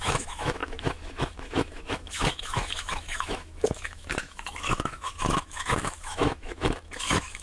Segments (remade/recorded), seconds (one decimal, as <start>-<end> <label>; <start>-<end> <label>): 0.0-7.4 remade

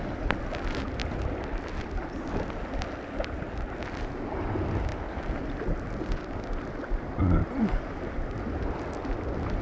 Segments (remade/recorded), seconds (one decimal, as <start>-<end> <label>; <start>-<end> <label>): 0.0-9.6 recorded